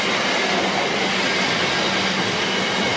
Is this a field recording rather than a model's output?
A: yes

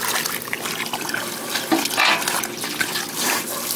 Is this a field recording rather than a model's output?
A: yes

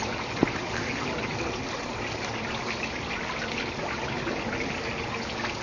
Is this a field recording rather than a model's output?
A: yes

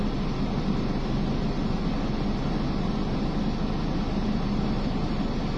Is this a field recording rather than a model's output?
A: yes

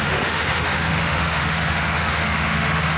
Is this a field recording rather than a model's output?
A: no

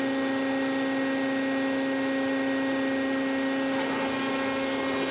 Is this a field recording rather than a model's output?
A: yes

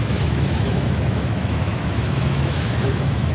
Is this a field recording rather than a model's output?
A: no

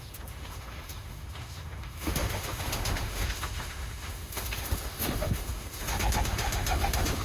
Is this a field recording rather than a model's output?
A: no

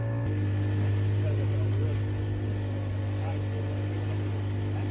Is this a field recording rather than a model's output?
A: yes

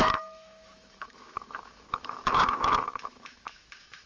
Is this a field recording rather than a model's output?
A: no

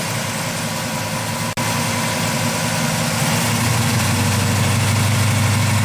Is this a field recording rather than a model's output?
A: yes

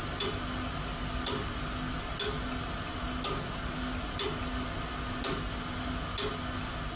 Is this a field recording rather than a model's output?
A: yes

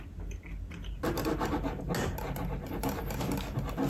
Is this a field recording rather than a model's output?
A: yes